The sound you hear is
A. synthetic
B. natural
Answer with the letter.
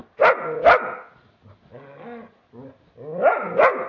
B